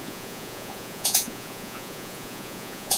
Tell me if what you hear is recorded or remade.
remade